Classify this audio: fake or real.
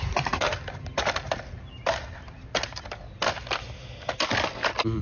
real